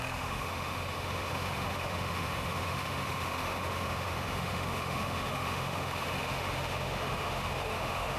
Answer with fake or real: fake